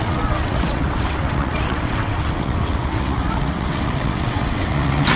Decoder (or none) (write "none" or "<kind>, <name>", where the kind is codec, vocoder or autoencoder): vocoder, WaveNeXt